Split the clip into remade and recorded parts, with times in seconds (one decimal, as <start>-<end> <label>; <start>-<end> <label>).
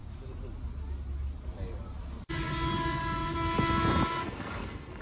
0.0-4.2 recorded; 4.2-5.0 remade